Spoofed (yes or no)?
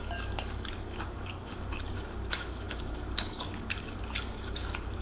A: yes